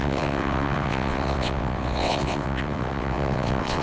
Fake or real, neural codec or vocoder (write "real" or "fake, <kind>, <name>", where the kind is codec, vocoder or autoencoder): fake, vocoder, WaveNeXt